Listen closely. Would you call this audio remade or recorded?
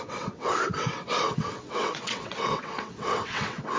remade